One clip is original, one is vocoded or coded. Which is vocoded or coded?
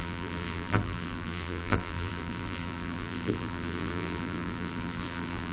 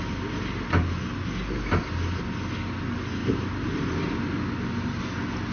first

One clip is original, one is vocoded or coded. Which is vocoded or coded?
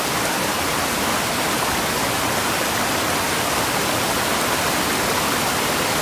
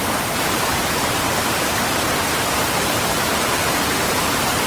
second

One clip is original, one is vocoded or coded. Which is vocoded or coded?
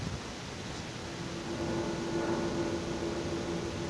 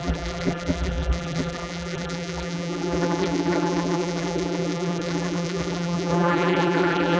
second